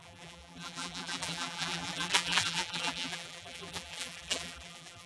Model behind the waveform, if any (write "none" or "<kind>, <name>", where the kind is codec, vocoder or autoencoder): vocoder, BigVGAN v2